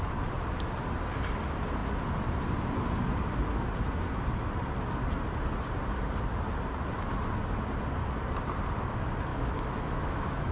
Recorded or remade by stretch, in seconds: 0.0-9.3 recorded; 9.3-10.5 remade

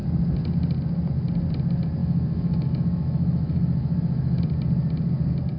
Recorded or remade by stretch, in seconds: 0.0-2.0 recorded; 2.0-4.4 remade; 4.4-5.6 recorded

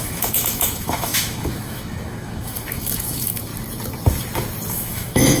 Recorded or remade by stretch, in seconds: 0.0-3.5 remade; 3.5-4.7 recorded; 4.7-5.4 remade